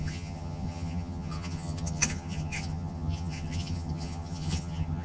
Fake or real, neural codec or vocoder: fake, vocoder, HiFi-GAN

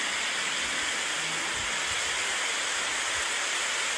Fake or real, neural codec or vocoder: real